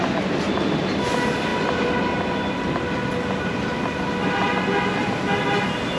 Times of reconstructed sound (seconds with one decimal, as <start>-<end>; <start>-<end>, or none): none